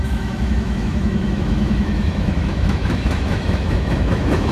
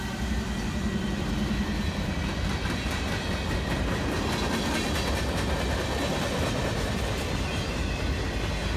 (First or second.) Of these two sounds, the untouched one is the second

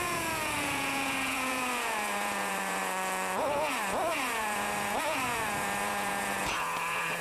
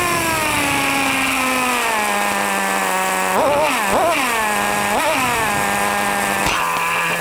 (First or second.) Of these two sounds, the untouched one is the second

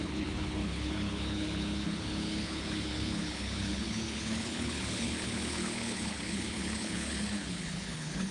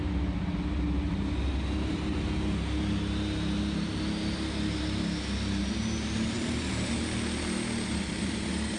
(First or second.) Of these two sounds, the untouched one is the second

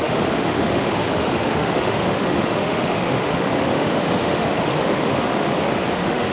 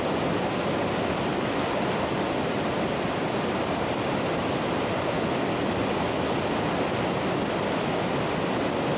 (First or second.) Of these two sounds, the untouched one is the second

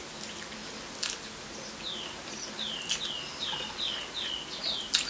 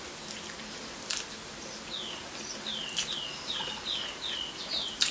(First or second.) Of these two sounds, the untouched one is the first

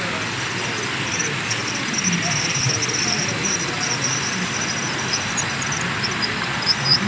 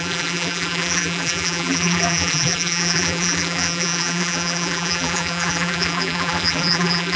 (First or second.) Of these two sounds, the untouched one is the first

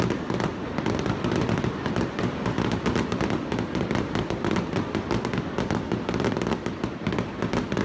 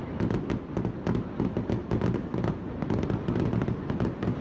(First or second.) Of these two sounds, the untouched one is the second